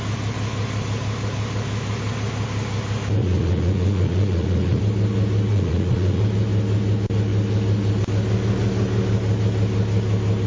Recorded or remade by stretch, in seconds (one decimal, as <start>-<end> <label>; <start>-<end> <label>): 0.0-3.2 recorded; 3.2-4.8 remade; 4.8-5.5 recorded; 5.5-6.2 remade; 6.2-10.5 recorded